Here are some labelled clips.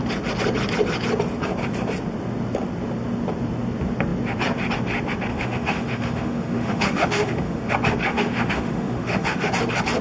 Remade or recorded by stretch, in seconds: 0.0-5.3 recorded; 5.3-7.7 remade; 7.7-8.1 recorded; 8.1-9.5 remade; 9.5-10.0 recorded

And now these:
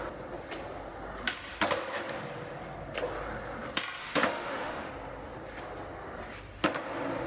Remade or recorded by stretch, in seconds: 0.0-4.0 recorded; 4.0-4.9 remade; 4.9-7.3 recorded

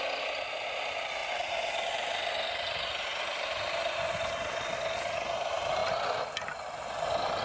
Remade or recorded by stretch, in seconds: 0.0-7.4 recorded